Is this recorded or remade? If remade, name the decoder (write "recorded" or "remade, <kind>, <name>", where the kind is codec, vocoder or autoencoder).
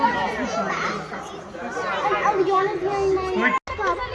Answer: recorded